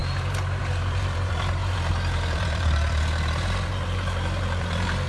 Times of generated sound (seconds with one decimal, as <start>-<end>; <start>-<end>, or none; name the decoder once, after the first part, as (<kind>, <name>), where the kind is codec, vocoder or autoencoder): 0.0-5.1 (vocoder, BigVGAN v2)